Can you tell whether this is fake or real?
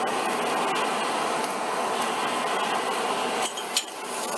real